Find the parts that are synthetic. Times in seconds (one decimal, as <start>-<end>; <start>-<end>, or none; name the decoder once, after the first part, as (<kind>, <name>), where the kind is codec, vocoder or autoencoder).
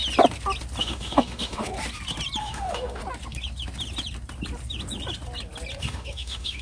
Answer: 0.8-1.7 (autoencoder, DAC-VAE); 2.4-3.0; 5.8-6.6